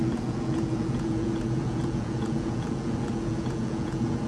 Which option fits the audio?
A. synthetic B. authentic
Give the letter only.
A